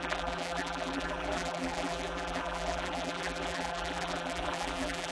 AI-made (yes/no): yes